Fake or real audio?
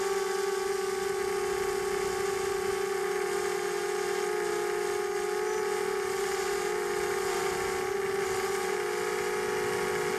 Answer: real